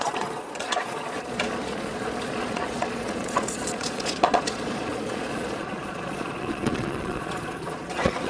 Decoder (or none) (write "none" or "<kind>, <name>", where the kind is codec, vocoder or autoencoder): vocoder, Vocos